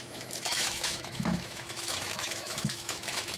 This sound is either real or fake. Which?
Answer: fake